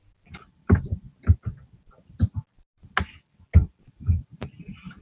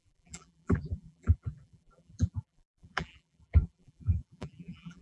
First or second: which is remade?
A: second